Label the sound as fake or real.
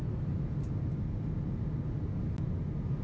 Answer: real